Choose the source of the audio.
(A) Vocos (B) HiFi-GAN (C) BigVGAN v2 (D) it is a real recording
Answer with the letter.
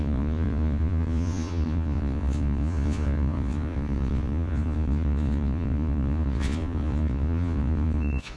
A